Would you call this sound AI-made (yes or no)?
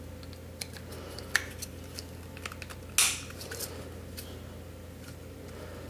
no